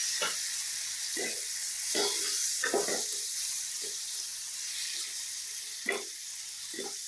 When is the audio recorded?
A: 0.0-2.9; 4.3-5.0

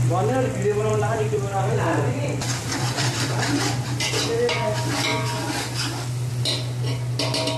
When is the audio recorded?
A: 0.0-0.9; 3.3-7.6

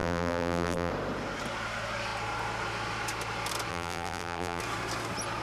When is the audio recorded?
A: 0.9-3.7; 4.6-5.4

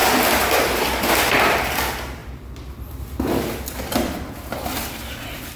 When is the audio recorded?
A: none

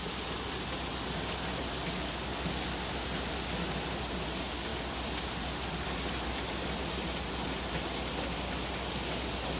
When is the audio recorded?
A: 0.0-4.7; 5.3-9.6

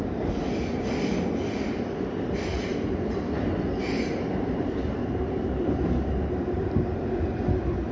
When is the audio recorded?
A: 0.0-5.0; 7.0-7.9

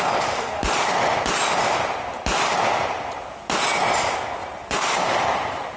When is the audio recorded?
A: 0.0-4.4